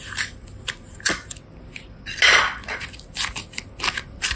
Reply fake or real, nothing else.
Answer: real